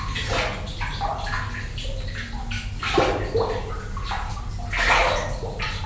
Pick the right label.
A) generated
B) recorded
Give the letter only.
B